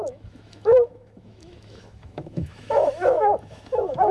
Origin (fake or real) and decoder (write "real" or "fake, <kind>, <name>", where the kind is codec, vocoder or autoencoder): fake, autoencoder, DAC-VAE